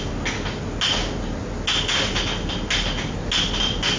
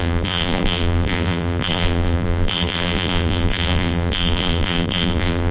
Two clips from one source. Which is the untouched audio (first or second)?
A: first